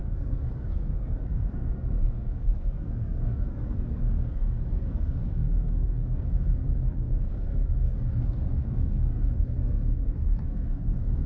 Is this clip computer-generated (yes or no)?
yes